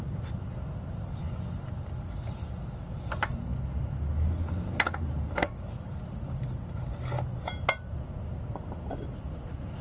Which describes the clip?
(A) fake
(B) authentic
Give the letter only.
B